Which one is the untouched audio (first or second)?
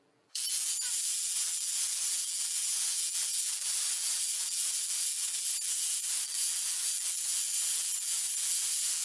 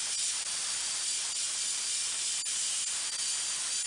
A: second